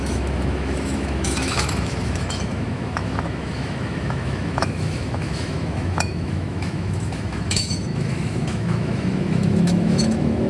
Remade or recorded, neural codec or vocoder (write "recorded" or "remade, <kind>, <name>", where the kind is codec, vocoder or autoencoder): remade, autoencoder, DAC-VAE